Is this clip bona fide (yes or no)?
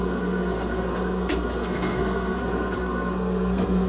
no